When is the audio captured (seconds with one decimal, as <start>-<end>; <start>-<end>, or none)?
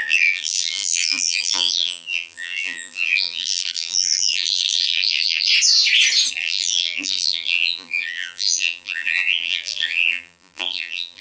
5.5-6.3